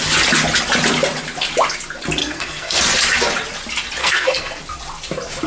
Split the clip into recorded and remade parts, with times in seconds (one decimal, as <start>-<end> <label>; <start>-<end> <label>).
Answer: 0.0-2.2 recorded; 2.2-2.8 remade; 2.8-4.0 recorded; 4.0-4.6 remade; 4.6-5.5 recorded